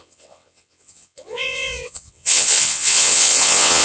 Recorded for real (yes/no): no